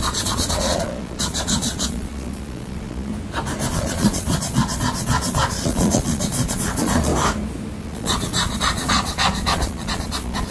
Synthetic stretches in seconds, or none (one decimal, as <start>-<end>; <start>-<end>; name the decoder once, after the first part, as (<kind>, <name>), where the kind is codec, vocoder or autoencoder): 0.0-3.1 (vocoder, Vocos); 3.7-7.1; 7.8-10.5